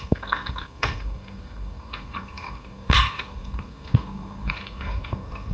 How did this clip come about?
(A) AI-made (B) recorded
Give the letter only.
A